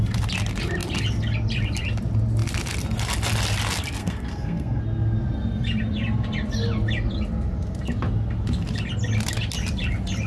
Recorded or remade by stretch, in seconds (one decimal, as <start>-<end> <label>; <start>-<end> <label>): 0.0-4.0 recorded; 4.0-4.8 remade; 4.8-10.3 recorded